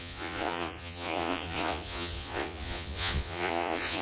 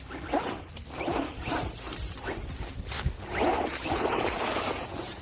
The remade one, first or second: first